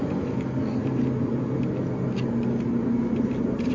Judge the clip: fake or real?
real